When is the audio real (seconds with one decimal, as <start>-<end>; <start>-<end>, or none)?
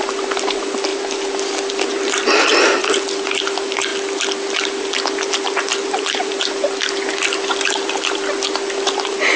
0.0-9.4